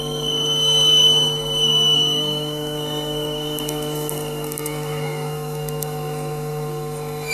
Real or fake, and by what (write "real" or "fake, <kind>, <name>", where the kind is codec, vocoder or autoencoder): fake, codec, SNAC